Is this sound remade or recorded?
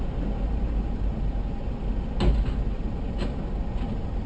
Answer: recorded